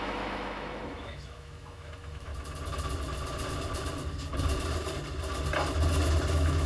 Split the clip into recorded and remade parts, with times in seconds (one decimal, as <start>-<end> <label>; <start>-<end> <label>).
0.0-2.3 remade; 2.3-6.3 recorded; 6.3-6.7 remade